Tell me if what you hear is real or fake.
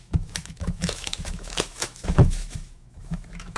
fake